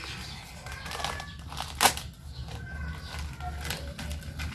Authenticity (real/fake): real